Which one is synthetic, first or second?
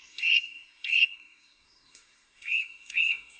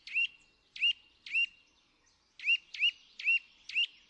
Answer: first